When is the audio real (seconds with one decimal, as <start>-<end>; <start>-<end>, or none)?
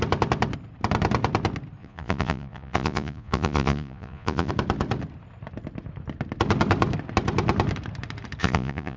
0.0-1.8; 4.5-8.4